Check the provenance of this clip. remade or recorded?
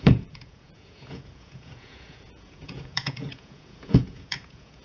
remade